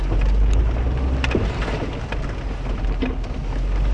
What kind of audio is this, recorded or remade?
recorded